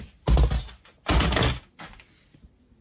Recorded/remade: recorded